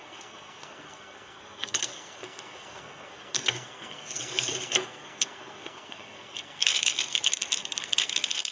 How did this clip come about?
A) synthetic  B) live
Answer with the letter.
A